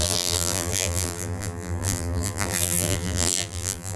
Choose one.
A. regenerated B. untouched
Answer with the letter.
A